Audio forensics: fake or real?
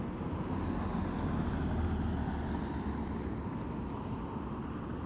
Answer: real